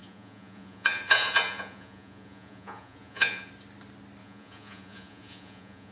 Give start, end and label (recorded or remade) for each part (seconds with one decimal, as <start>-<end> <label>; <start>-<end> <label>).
0.0-3.5 remade; 3.5-4.2 recorded; 4.2-5.9 remade